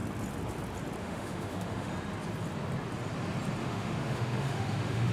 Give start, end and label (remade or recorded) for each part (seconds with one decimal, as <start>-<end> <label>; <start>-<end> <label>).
0.0-1.0 recorded; 1.0-1.9 remade; 1.9-3.6 recorded; 3.6-5.1 remade